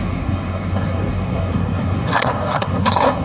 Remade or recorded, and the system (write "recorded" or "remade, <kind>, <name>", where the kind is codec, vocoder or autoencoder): remade, codec, SNAC